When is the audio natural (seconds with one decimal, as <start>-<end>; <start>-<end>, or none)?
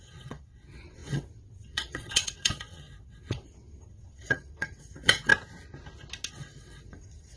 5.3-6.3